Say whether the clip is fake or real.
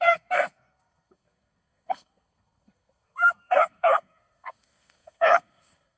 fake